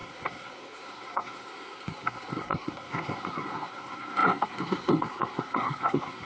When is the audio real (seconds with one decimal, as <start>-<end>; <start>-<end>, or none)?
none